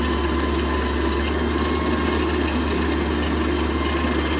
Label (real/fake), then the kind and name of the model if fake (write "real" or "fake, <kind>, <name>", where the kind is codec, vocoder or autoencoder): real